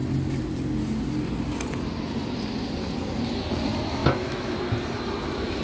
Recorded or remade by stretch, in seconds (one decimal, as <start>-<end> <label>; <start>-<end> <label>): 0.0-4.0 recorded; 4.0-4.6 remade; 4.6-5.6 recorded